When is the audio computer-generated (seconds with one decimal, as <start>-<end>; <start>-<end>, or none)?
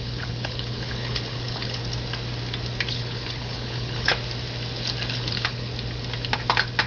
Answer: 0.0-1.8; 2.9-4.1; 5.1-5.7